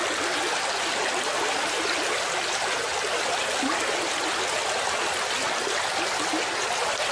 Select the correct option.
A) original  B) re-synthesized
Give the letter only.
A